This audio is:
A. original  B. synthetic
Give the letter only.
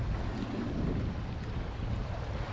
A